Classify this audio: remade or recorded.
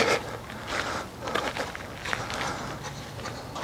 recorded